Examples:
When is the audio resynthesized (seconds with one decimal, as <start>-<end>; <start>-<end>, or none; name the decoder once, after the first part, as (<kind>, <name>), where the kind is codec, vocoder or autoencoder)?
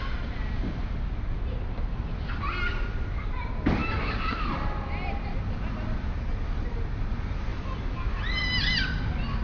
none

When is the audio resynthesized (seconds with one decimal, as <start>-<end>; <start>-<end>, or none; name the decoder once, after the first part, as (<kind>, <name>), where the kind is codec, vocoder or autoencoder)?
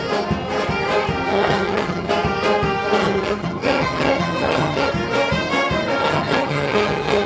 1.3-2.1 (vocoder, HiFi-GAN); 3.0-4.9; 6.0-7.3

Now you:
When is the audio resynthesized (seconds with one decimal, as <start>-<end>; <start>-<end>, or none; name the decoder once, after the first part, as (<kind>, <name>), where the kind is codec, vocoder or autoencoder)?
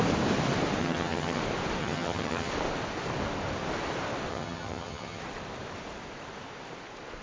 0.8-1.4 (vocoder, HiFi-GAN); 1.8-2.5; 4.3-5.2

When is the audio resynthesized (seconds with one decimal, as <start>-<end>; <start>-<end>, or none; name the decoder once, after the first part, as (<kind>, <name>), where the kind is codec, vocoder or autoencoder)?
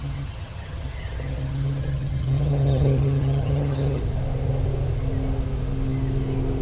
0.0-4.0 (vocoder, HiFi-GAN)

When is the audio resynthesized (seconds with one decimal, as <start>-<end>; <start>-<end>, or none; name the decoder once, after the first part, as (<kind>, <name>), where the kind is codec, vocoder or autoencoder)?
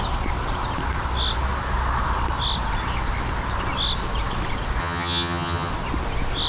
4.8-5.7 (vocoder, HiFi-GAN)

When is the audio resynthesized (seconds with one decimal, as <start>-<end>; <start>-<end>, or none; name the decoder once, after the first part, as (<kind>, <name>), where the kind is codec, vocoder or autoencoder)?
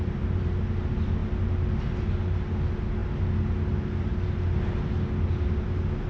none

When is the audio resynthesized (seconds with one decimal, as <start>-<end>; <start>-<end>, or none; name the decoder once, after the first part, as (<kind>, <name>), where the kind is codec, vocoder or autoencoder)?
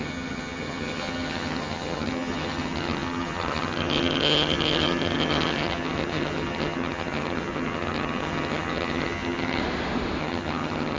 0.0-9.6 (vocoder, HiFi-GAN); 10.2-11.0